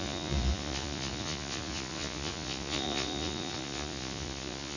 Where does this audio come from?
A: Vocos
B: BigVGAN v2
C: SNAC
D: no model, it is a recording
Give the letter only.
A